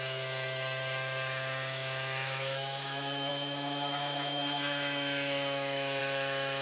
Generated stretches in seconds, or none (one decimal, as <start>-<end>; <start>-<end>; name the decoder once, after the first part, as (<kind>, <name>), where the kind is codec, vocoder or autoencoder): 0.0-6.6 (autoencoder, DAC-VAE)